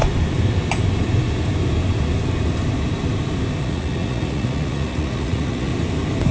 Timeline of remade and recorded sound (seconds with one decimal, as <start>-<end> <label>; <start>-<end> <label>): 0.0-3.6 recorded; 3.6-5.7 remade; 5.7-6.3 recorded